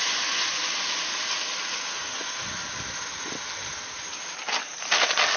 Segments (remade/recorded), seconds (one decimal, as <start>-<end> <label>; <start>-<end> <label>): 0.0-0.6 remade; 0.6-1.7 recorded; 1.7-2.6 remade; 2.6-5.4 recorded